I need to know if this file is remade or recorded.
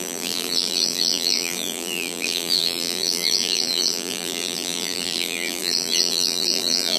remade